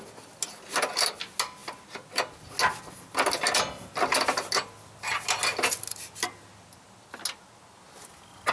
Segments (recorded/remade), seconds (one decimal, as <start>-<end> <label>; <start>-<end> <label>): 0.0-8.5 recorded